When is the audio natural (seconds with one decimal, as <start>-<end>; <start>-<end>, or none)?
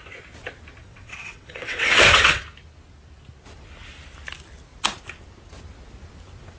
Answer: 0.0-0.8; 2.4-6.6